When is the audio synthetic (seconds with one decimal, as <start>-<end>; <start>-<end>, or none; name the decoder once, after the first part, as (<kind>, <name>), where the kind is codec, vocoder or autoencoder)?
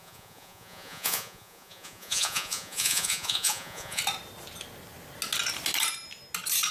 0.0-4.0 (vocoder, Vocos)